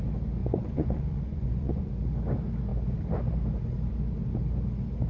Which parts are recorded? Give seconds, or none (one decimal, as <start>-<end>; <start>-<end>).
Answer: 0.0-0.4; 1.9-5.1